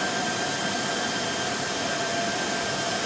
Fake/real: real